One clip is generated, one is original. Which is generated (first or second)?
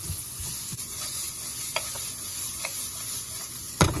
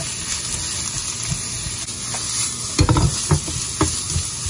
first